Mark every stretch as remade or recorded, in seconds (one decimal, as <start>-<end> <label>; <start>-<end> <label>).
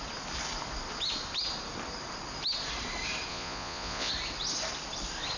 0.0-3.3 recorded; 3.3-4.1 remade; 4.1-5.4 recorded